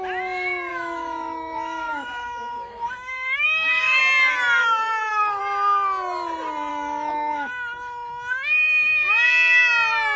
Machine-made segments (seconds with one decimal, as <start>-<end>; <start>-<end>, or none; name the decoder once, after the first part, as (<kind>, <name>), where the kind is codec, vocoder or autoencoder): 0.7-4.0 (autoencoder, DAC-VAE); 4.6-5.4; 6.7-7.5